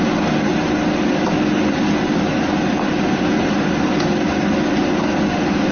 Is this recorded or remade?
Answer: recorded